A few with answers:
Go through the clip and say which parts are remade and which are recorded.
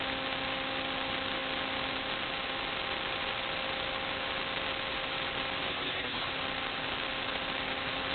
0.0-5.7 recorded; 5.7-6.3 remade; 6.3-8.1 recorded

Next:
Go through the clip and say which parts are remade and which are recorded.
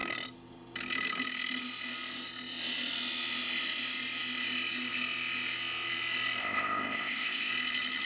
0.0-6.4 recorded; 6.4-7.5 remade; 7.5-8.0 recorded